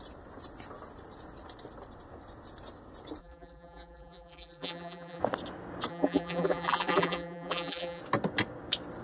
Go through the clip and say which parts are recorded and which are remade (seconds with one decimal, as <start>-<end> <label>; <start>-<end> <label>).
0.0-3.2 recorded; 3.2-5.2 remade; 5.2-5.9 recorded; 5.9-8.0 remade; 8.0-9.0 recorded